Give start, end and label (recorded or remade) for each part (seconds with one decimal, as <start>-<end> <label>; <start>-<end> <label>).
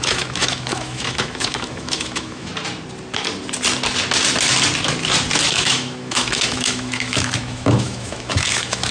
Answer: 0.0-2.5 remade; 2.5-5.5 recorded; 5.5-8.9 remade